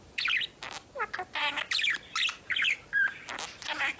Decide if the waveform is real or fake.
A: real